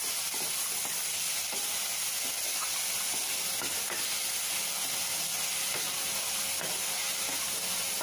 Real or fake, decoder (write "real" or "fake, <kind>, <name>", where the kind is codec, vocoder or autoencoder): real